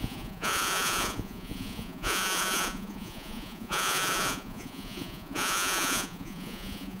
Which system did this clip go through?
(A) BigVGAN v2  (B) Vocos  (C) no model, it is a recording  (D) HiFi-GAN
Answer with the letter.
B